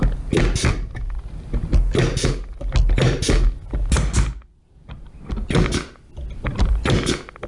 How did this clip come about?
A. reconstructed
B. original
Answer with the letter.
B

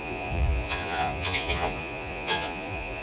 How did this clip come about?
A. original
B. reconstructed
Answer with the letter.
B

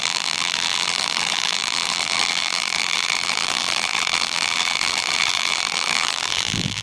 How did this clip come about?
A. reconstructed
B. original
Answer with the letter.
A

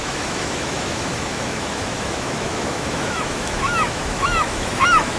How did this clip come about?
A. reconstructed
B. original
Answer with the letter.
A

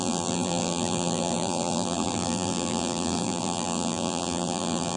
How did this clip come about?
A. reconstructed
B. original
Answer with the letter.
A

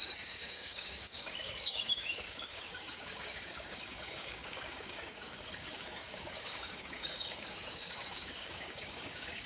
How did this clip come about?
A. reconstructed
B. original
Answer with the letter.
A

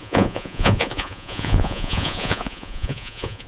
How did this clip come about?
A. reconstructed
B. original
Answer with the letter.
A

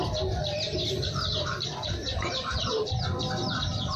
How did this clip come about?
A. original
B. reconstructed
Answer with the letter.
B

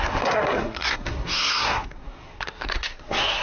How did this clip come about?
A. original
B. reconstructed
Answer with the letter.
B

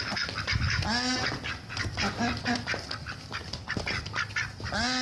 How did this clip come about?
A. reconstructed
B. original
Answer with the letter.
B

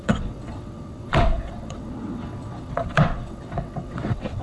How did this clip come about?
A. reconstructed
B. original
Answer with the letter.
A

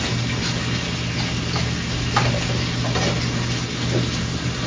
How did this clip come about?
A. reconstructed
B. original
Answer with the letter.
B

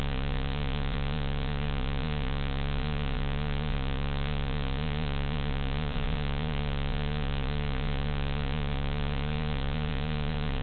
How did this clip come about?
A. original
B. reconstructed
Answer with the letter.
B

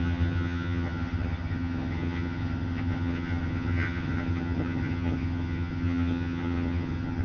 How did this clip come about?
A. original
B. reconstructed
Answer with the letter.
B